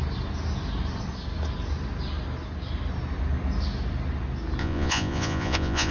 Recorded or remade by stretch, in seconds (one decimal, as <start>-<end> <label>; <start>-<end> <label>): 0.0-4.6 recorded; 4.6-5.9 remade